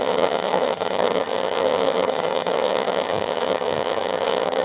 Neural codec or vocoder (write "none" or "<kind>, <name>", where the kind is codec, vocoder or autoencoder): vocoder, HiFi-GAN